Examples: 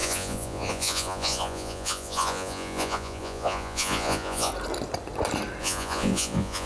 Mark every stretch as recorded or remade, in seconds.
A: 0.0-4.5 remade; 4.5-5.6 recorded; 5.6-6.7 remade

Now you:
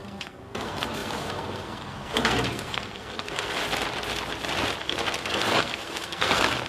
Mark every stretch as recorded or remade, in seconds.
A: 0.0-3.6 remade; 3.6-4.8 recorded; 4.8-6.7 remade

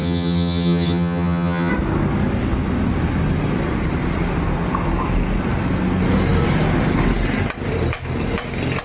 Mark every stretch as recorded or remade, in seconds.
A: 0.0-1.7 remade; 1.7-8.8 recorded

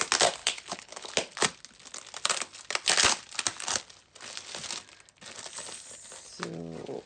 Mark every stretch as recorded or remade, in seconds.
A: 0.0-0.4 recorded; 0.4-1.1 remade; 1.1-7.1 recorded